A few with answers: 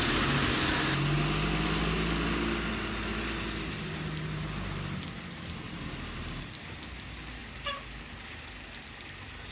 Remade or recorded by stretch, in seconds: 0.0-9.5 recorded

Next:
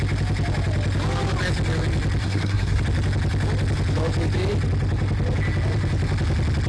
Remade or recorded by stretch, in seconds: 0.0-2.2 recorded; 2.2-2.8 remade; 2.8-6.7 recorded

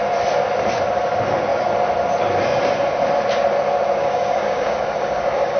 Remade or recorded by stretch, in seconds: 0.0-4.0 recorded; 4.0-5.6 remade

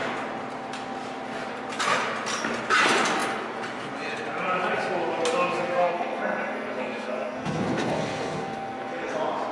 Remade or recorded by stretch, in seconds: 0.0-5.8 recorded; 5.8-9.1 remade; 9.1-9.5 recorded